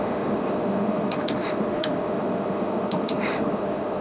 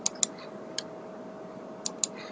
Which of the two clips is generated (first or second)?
first